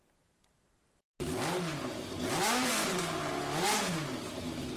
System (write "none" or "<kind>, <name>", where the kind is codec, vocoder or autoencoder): none